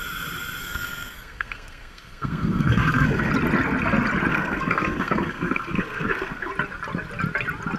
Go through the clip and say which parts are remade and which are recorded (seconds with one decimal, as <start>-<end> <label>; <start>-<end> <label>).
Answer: 0.0-0.6 recorded; 0.6-3.3 remade; 3.3-4.3 recorded; 4.3-6.5 remade; 6.5-7.8 recorded